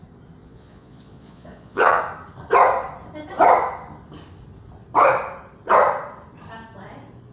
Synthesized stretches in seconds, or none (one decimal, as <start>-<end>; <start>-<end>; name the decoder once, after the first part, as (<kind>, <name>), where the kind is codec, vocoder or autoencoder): 0.4-2.0 (vocoder, Vocos)